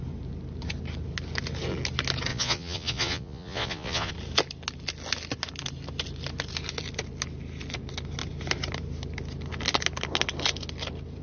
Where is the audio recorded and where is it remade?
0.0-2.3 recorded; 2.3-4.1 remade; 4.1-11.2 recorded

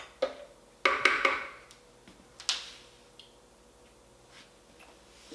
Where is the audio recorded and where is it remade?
0.0-5.3 recorded

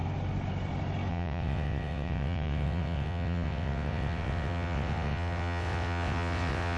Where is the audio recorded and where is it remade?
0.0-1.1 recorded; 1.1-6.8 remade

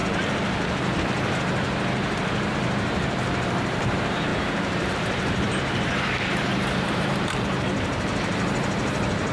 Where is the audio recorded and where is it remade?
0.0-2.5 recorded; 2.5-9.3 remade

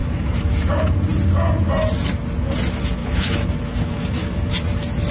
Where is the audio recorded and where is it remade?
0.0-0.7 remade; 0.7-3.0 recorded; 3.0-4.5 remade; 4.5-5.1 recorded

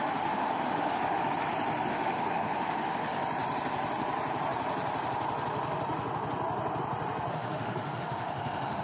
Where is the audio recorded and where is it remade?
0.0-1.2 remade; 1.2-1.9 recorded; 1.9-3.2 remade; 3.2-7.3 recorded; 7.3-8.8 remade

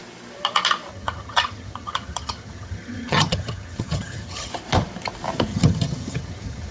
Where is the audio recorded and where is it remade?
0.0-0.9 recorded; 0.9-4.5 remade; 4.5-5.5 recorded; 5.5-6.7 remade

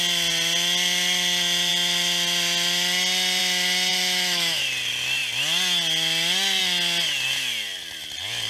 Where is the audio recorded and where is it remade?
0.0-3.9 recorded; 3.9-4.6 remade; 4.6-8.5 recorded